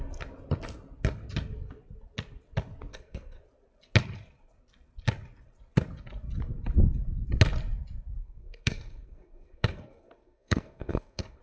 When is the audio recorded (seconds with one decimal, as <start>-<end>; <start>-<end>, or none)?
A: 0.0-2.9; 3.4-8.2